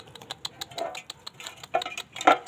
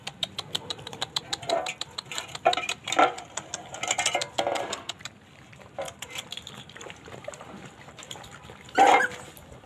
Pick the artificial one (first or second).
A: second